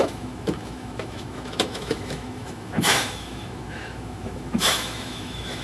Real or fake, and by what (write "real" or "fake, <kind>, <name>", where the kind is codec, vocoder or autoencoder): fake, autoencoder, DAC-VAE